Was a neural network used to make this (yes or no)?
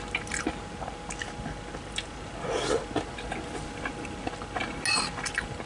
no